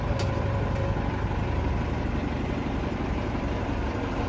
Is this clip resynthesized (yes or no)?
yes